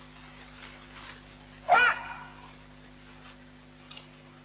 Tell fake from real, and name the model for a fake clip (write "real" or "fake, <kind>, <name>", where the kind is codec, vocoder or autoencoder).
real